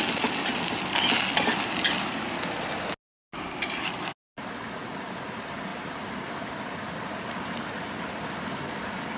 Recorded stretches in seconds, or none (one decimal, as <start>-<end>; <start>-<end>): 0.0-5.7; 6.3-9.2

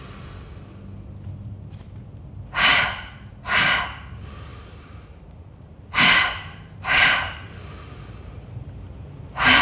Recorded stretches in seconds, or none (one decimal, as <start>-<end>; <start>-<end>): 0.0-2.7; 3.3-4.5; 9.2-9.6